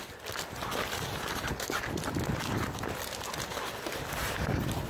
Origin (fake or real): real